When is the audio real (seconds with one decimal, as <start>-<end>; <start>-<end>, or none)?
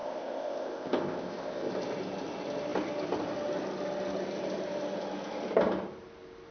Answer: 1.7-6.5